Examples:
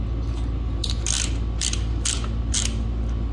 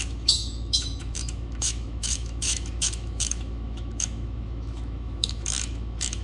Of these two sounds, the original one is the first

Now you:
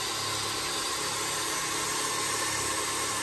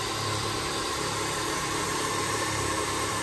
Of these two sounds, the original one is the first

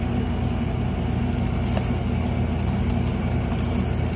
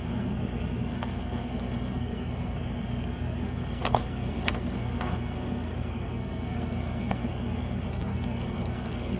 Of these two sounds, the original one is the first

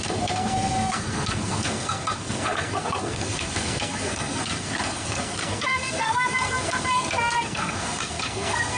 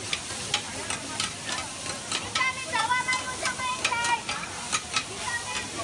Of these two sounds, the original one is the second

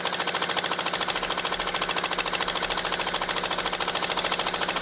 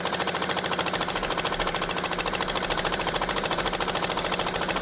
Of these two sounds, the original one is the first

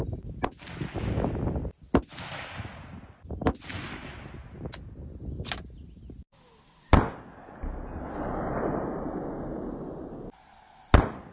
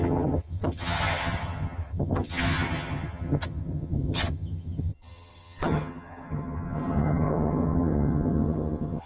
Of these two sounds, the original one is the first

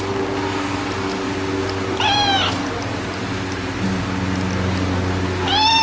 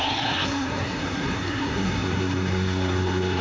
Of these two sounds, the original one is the first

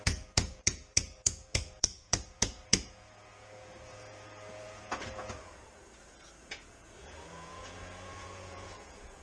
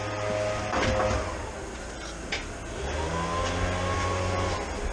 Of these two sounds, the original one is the second